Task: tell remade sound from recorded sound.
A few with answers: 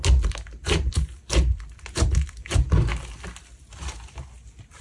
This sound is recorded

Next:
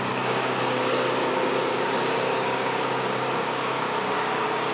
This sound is remade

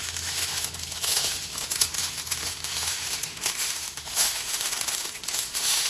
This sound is remade